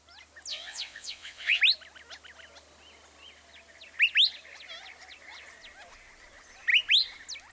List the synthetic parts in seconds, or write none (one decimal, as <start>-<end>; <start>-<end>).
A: 0.5-1.6